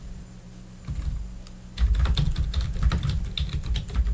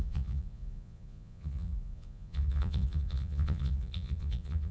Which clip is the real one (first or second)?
first